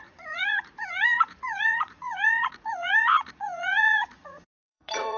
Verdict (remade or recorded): remade